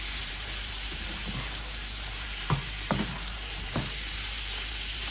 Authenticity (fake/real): fake